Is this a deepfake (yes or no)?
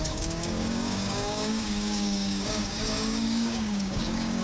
yes